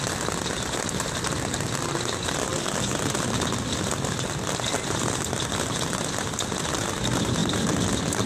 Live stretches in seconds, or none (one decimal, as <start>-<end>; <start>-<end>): 0.0-8.3

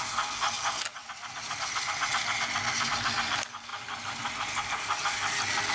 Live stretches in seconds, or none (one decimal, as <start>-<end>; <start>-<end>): 0.0-5.7

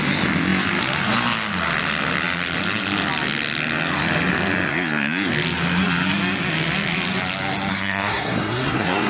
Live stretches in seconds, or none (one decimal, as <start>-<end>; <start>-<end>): 0.0-4.7; 5.3-7.7

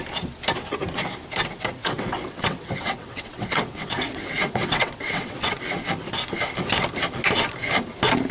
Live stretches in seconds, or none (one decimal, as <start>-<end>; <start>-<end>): 0.0-1.8; 5.5-8.3

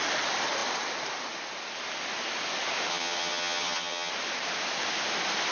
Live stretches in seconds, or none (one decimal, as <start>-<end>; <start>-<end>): 0.0-2.9; 4.1-5.5

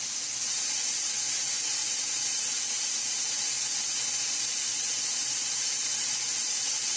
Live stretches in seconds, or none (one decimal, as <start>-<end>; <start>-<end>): 0.0-7.0